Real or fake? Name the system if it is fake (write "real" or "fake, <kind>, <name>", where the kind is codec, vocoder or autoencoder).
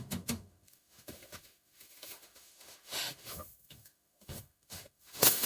fake, autoencoder, DAC-VAE